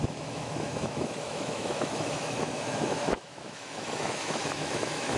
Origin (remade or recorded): remade